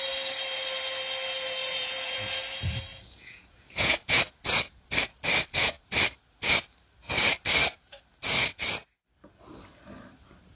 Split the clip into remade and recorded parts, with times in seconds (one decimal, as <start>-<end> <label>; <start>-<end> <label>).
0.0-1.6 recorded; 1.6-2.4 remade; 2.4-2.9 recorded; 2.9-4.2 remade; 4.2-10.6 recorded